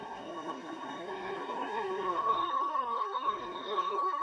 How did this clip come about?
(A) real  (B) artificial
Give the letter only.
B